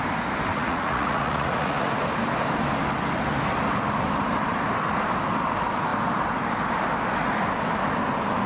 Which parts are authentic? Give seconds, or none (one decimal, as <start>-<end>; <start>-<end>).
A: 0.0-0.5; 1.9-8.5